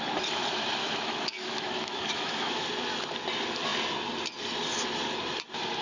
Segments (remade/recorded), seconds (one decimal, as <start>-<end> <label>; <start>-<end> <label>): 0.0-0.8 recorded; 0.8-2.7 remade; 2.7-5.8 recorded